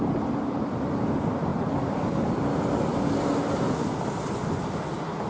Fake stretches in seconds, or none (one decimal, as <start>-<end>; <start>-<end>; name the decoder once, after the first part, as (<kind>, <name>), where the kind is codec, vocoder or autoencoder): none